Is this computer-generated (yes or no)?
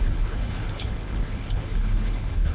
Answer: yes